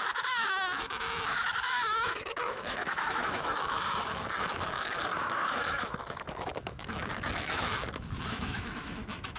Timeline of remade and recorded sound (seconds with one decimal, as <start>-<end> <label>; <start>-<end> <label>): 0.0-9.4 remade